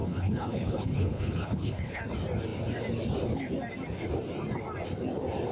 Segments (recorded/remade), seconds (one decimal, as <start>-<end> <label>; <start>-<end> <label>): 0.0-2.0 remade; 2.0-5.5 recorded

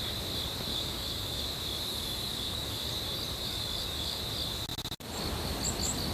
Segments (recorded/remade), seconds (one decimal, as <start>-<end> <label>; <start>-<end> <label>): 0.0-0.7 recorded; 0.7-1.4 remade; 1.4-1.9 recorded; 1.9-2.9 remade; 2.9-3.4 recorded; 3.4-4.2 remade; 4.2-6.1 recorded

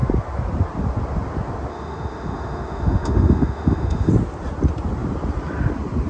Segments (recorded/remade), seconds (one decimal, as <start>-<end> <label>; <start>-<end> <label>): 0.0-1.7 recorded; 1.7-4.1 remade; 4.1-6.1 recorded

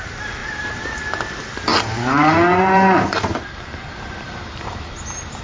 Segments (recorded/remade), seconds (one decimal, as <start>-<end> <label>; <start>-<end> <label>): 0.0-0.4 recorded; 0.4-1.0 remade; 1.0-1.7 recorded; 1.7-4.9 remade; 4.9-5.4 recorded

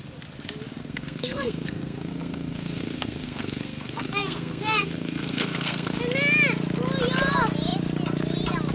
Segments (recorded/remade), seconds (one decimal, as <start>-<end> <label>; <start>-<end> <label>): 0.0-0.8 recorded; 0.8-6.0 remade; 6.0-8.7 recorded

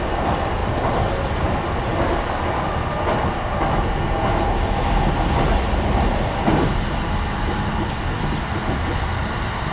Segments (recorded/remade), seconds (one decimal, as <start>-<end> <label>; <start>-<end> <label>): 0.0-9.7 recorded

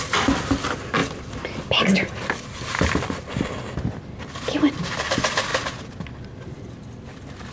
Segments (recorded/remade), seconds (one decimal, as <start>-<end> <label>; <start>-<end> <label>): 0.0-7.5 recorded

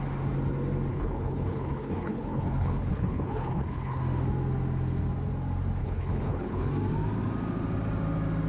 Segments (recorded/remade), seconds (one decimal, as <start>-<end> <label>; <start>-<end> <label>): 0.0-0.9 recorded; 0.9-4.0 remade; 4.0-5.8 recorded; 5.8-6.7 remade; 6.7-8.5 recorded